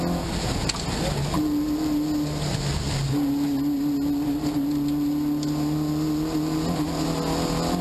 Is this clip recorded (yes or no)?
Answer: yes